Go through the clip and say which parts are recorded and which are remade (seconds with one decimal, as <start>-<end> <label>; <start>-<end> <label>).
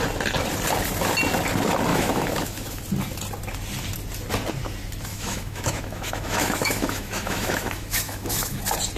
0.0-1.9 recorded; 1.9-2.8 remade; 2.8-5.1 recorded; 5.1-8.6 remade; 8.6-9.0 recorded